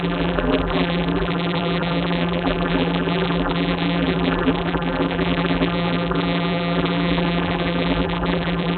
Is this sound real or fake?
fake